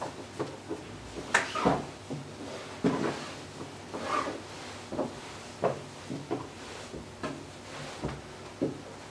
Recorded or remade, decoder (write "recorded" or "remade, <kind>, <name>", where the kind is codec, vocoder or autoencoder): recorded